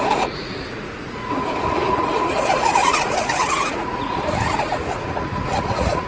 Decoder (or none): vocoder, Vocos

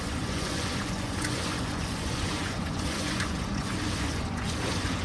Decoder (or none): vocoder, Vocos